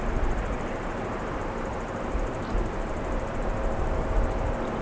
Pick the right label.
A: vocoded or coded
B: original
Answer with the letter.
A